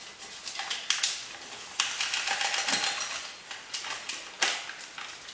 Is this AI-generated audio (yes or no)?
no